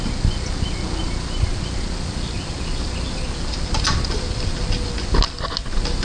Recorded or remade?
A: recorded